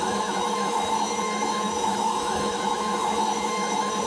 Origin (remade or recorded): remade